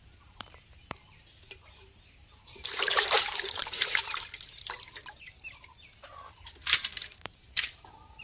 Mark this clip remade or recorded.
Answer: remade